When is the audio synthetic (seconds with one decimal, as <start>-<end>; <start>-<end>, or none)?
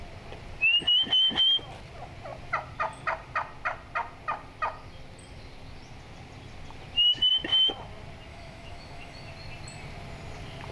8.3-9.3